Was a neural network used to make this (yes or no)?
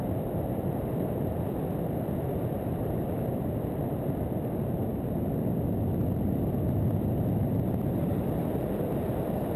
yes